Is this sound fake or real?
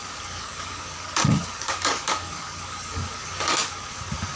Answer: fake